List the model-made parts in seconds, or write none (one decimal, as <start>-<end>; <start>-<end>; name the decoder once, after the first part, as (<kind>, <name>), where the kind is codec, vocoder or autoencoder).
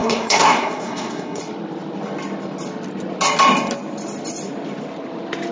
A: 0.0-1.4 (codec, SNAC)